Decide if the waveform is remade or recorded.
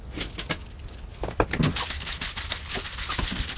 recorded